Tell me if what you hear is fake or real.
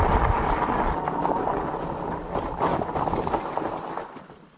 real